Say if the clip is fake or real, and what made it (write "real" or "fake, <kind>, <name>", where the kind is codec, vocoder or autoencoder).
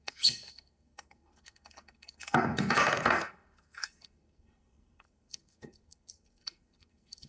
fake, codec, SNAC